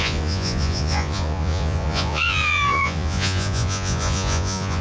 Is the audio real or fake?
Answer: fake